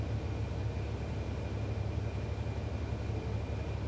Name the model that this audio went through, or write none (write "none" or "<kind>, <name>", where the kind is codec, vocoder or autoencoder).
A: none